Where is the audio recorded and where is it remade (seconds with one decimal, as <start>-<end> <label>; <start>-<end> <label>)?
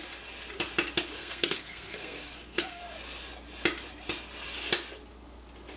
0.0-1.2 recorded; 1.2-2.8 remade; 2.8-5.8 recorded